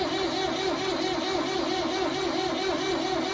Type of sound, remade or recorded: recorded